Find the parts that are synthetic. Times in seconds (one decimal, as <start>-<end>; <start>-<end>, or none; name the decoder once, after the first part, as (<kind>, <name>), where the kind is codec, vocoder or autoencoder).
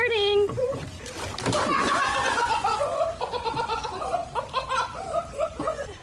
0.0-0.8 (vocoder, Vocos); 1.6-4.2; 5.3-6.0